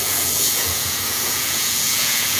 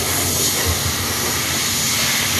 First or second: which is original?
second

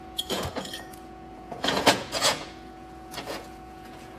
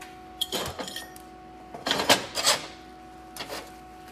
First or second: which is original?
second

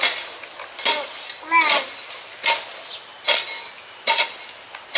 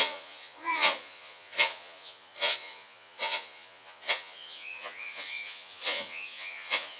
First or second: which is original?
first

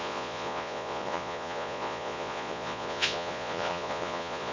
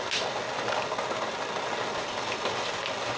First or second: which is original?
second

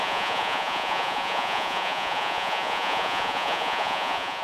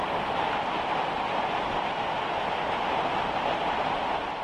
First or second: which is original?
second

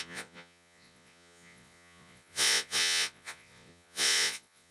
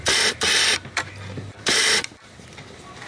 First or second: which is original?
second